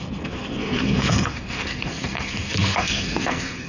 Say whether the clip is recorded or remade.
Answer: remade